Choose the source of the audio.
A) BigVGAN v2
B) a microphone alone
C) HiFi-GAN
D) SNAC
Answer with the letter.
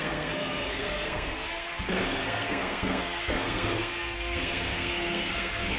D